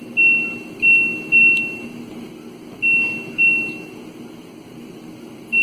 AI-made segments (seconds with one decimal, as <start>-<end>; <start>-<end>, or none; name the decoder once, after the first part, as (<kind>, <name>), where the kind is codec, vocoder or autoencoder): none